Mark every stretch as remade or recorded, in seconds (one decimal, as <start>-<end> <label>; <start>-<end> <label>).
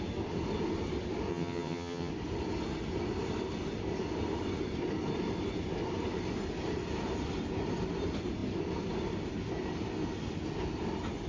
0.0-1.3 recorded; 1.3-2.1 remade; 2.1-11.3 recorded